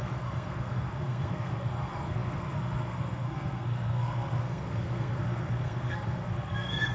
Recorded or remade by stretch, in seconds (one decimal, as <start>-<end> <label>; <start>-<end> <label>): 0.0-6.9 remade